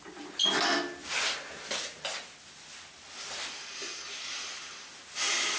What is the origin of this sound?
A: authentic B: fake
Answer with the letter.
A